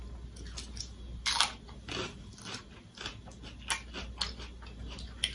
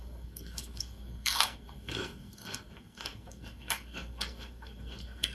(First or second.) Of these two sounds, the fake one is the second